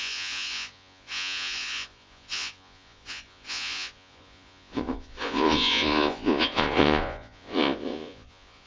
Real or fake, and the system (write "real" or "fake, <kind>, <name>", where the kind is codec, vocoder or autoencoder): fake, vocoder, Vocos